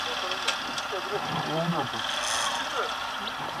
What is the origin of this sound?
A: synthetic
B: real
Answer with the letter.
B